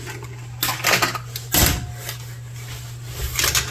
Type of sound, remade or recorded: recorded